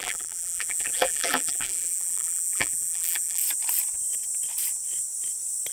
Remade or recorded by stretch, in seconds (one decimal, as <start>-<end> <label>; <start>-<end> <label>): 0.0-3.4 remade; 3.4-5.7 recorded